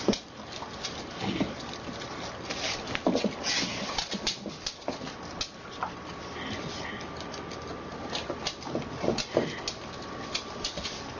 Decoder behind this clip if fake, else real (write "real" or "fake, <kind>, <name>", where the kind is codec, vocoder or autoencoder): real